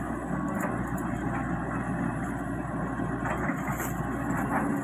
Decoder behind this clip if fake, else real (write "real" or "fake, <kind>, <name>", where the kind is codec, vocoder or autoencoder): real